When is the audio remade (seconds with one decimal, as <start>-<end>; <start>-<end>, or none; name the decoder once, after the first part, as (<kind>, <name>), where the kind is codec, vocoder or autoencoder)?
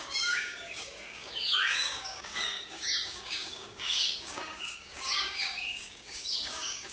0.0-6.9 (codec, DAC)